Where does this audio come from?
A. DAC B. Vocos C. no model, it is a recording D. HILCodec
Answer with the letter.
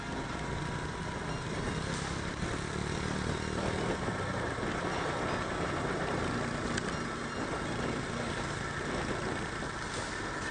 C